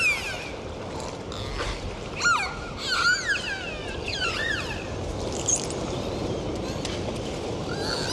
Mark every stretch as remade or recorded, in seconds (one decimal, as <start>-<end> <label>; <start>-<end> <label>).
0.0-3.8 recorded; 3.8-4.5 remade; 4.5-8.1 recorded